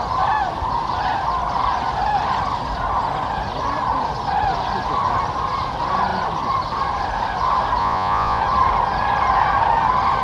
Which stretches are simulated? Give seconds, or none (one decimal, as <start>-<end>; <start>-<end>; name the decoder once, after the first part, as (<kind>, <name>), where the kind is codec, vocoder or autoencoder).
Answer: 7.8-8.4 (vocoder, Vocos)